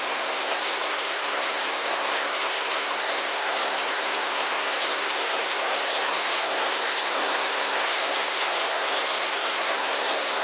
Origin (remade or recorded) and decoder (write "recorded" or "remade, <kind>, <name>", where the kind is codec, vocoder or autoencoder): remade, codec, SNAC